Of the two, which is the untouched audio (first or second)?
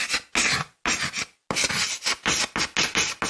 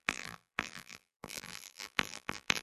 first